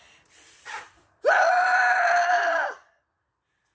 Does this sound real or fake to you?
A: real